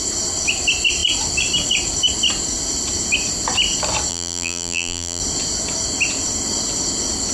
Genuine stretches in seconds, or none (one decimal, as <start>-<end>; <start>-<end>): 0.0-4.1; 5.2-7.3

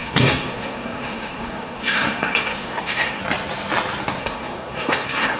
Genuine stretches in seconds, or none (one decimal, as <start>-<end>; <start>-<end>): 3.2-4.2